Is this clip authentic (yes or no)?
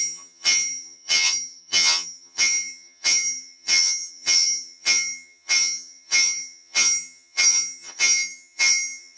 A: no